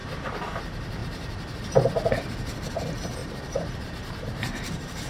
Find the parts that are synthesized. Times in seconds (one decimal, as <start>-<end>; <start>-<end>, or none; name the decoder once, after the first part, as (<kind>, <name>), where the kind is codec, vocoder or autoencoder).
3.2-5.1 (vocoder, BigVGAN v2)